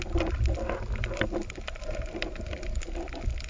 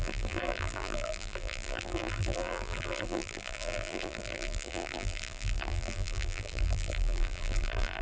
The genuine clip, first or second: first